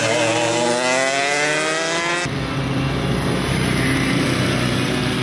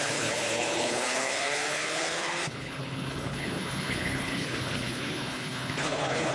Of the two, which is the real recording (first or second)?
first